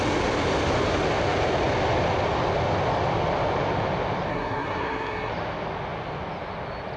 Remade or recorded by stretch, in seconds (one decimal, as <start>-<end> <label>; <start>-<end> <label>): 0.0-4.3 recorded; 4.3-5.3 remade; 5.3-7.0 recorded